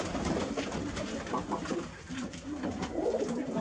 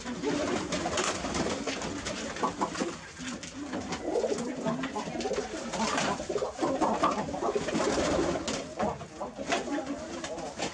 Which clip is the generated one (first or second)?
first